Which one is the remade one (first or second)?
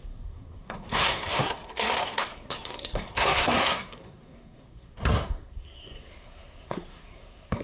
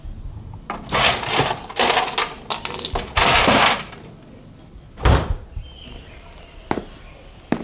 first